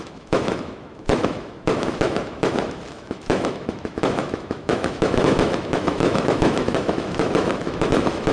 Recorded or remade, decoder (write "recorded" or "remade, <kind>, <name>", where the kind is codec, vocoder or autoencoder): remade, autoencoder, DAC-VAE